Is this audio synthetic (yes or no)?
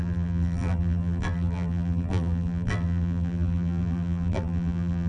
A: yes